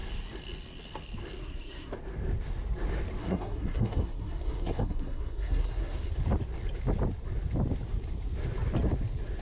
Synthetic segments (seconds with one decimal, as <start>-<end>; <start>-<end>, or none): 1.4-2.0; 3.2-6.1